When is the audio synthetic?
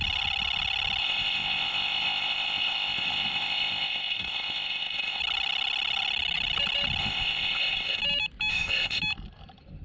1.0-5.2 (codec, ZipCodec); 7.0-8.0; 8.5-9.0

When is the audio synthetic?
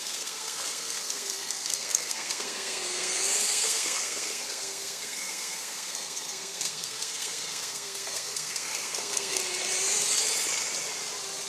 0.0-9.4 (codec, SNAC)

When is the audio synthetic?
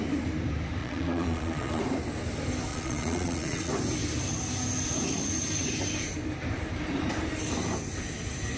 0.8-1.8 (vocoder, Vocos); 2.7-3.7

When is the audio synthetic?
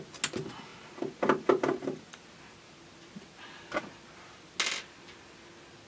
none